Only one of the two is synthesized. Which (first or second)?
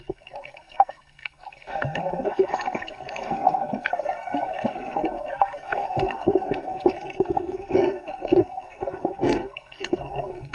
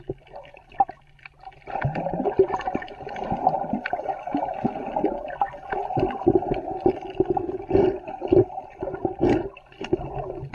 first